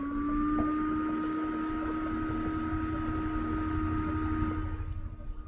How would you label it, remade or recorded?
recorded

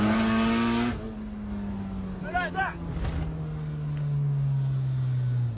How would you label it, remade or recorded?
recorded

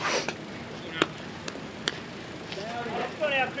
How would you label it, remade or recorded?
recorded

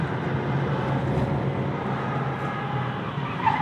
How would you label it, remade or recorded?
recorded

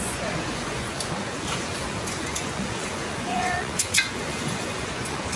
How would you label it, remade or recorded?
remade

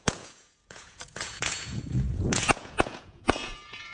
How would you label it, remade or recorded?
remade